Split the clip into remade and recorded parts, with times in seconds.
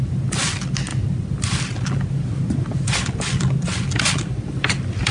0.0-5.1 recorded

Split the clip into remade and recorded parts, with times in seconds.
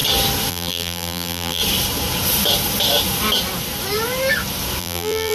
0.0-0.5 recorded; 0.5-1.6 remade; 1.6-4.8 recorded; 4.8-5.3 remade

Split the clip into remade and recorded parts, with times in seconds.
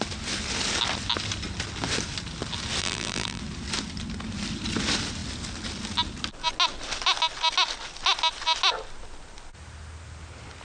0.0-2.8 recorded; 2.8-3.4 remade; 3.4-10.6 recorded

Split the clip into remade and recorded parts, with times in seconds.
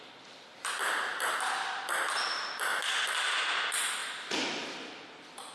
0.0-5.5 recorded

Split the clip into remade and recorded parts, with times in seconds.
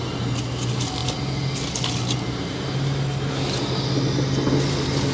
0.0-5.1 recorded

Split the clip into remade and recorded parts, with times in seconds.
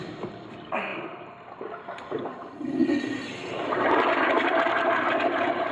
0.0-2.8 remade; 2.8-3.6 recorded; 3.6-5.7 remade